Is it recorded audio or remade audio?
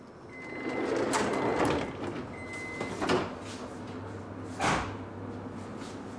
recorded